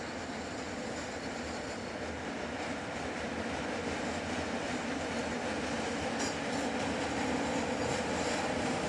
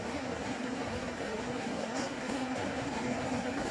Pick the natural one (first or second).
first